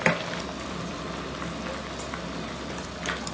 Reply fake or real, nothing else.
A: fake